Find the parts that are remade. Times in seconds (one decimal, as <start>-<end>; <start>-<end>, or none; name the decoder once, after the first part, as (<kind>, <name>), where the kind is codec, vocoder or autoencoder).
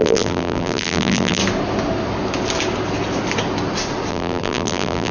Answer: 0.0-1.4 (vocoder, BigVGAN v2); 4.1-5.1